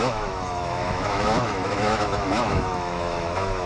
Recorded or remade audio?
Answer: remade